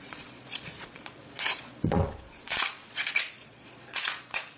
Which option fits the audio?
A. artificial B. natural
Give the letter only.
A